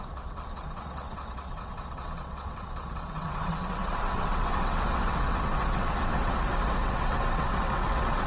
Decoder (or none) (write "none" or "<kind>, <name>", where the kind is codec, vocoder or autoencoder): vocoder, WaveNeXt